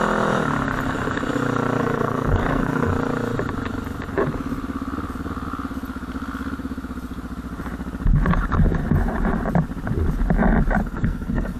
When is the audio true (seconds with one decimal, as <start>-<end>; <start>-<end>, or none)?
0.0-1.8; 2.9-10.8